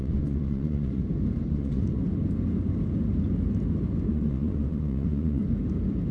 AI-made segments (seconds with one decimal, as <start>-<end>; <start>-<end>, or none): 0.0-1.0; 1.5-1.9; 4.1-5.4